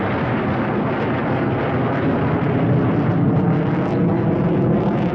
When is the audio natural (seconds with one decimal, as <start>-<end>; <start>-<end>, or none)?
0.0-5.1